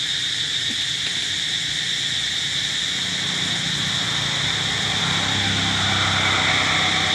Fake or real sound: real